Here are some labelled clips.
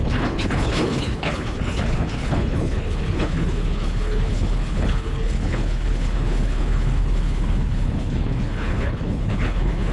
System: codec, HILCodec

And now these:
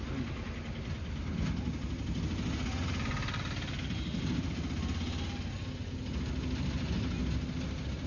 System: none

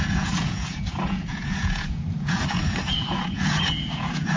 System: vocoder, Vocos